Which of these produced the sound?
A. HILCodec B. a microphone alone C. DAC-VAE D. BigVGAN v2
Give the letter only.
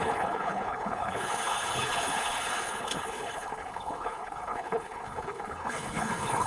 A